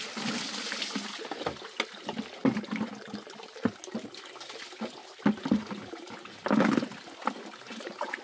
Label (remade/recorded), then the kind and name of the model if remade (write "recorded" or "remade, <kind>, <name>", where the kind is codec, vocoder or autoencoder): recorded